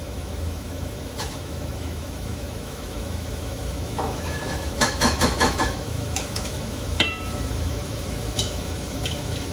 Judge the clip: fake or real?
fake